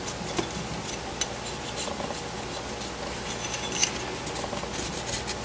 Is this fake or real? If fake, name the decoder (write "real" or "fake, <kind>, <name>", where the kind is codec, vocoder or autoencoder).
real